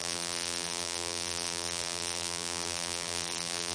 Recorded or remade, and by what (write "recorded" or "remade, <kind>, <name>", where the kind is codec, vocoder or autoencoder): remade, vocoder, BigVGAN v2